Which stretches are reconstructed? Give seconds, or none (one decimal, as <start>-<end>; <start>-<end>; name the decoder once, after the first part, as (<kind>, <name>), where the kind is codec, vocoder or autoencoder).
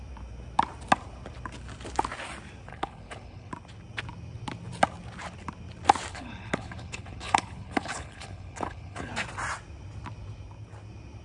2.7-3.5 (codec, HILCodec); 6.1-9.1